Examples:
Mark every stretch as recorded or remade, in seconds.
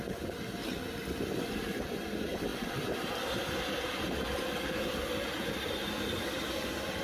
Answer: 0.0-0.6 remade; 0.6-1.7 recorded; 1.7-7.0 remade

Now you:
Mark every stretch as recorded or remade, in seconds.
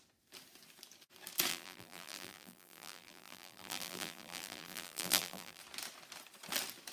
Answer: 0.0-1.5 recorded; 1.5-5.6 remade; 5.6-6.9 recorded